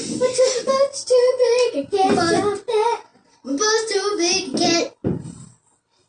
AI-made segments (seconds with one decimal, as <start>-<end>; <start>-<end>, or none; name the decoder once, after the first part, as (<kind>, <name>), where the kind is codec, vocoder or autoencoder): none